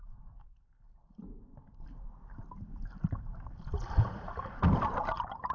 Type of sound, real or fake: real